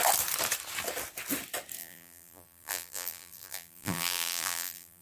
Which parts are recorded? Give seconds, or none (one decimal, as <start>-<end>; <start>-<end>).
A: 0.0-1.8

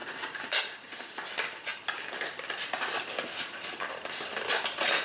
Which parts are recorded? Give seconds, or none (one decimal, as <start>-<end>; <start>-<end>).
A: 0.6-1.7; 4.5-5.0

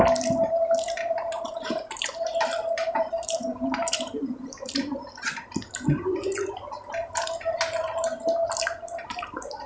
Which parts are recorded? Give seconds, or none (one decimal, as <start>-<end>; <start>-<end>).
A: 0.0-0.6; 5.0-7.0; 7.6-9.7

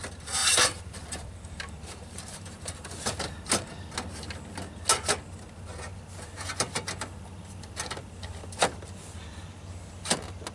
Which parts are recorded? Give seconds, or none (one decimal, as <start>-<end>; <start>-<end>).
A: 0.0-0.4; 3.2-10.5

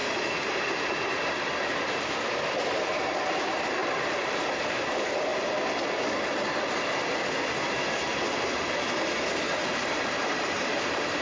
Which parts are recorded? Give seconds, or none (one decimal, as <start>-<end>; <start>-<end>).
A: 5.3-9.9

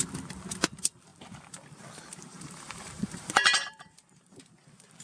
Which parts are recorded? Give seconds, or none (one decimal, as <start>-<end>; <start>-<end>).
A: 0.0-2.3; 4.4-5.0

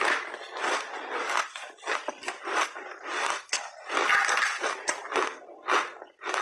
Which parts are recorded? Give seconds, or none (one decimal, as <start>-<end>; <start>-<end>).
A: 0.0-1.9